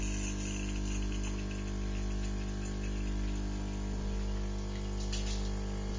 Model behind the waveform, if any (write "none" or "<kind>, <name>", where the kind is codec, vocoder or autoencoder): none